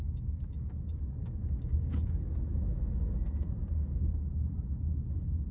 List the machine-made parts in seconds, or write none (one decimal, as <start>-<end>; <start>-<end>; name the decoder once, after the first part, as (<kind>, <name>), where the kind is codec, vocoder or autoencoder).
1.2-2.2 (codec, DAC); 3.6-4.5